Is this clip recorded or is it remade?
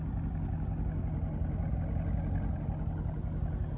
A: recorded